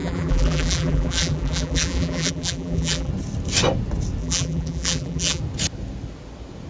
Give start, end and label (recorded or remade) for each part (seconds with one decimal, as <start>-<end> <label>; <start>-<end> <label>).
0.0-3.1 remade; 3.1-4.2 recorded; 4.2-5.4 remade; 5.4-6.7 recorded